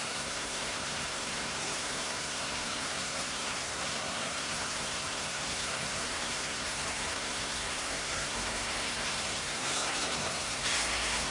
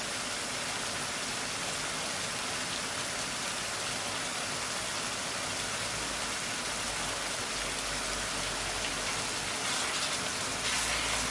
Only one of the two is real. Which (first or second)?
second